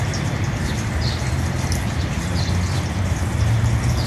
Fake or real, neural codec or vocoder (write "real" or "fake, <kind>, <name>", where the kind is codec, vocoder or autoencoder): real